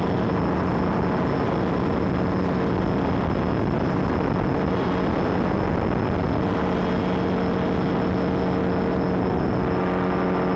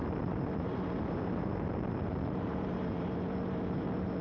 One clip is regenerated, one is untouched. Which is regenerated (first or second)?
second